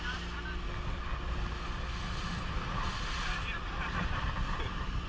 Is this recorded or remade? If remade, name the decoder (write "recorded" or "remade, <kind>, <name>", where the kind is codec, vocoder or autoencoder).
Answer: recorded